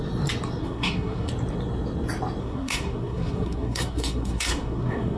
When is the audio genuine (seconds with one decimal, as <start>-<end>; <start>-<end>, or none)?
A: 0.0-0.6; 1.3-2.4